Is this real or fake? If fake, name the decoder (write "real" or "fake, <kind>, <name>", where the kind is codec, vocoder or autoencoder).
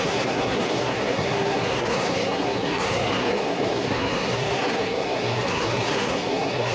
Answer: fake, codec, SNAC